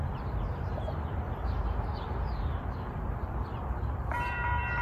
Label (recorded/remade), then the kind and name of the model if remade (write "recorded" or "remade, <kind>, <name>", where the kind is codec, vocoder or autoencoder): remade, vocoder, BigVGAN v2